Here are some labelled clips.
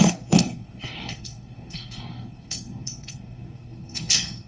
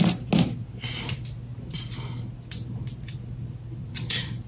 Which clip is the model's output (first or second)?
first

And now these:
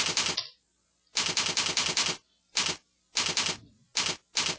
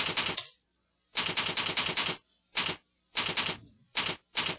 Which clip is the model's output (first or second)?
second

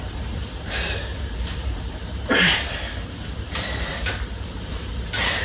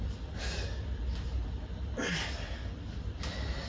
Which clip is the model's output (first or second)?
first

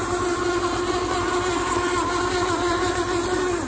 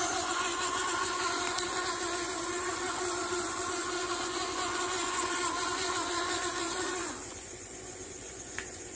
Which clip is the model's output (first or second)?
second